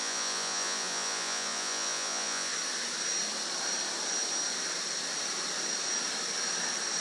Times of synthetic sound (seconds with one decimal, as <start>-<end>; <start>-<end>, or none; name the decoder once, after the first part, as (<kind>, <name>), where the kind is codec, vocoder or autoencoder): 0.0-2.5 (vocoder, Vocos)